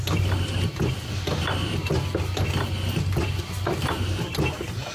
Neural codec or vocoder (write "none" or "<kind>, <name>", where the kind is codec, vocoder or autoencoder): none